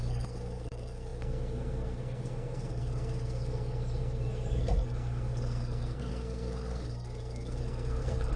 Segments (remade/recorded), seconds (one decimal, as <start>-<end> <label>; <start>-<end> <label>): 0.0-8.4 remade